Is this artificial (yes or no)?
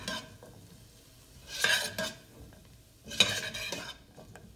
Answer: no